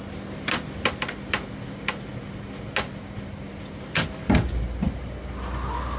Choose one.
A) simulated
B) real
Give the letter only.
B